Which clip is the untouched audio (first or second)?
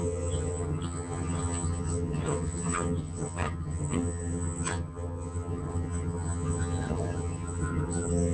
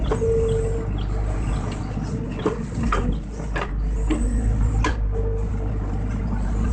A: second